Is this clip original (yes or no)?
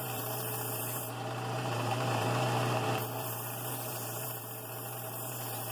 no